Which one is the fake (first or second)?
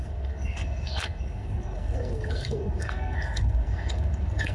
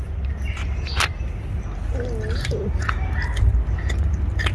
first